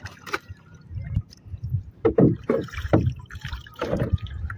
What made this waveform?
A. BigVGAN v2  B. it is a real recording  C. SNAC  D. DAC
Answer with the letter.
A